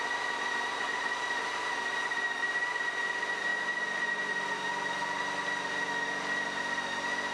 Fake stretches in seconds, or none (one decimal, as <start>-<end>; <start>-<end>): none